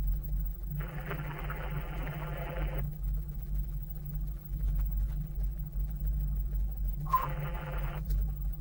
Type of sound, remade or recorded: remade